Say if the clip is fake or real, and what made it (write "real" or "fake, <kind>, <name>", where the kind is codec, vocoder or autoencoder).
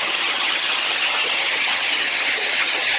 fake, vocoder, HiFi-GAN